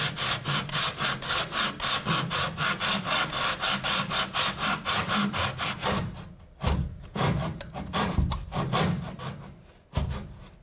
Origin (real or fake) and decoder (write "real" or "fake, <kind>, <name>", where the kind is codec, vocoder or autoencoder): real